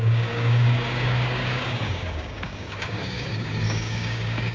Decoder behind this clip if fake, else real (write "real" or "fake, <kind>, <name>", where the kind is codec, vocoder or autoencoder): fake, codec, DAC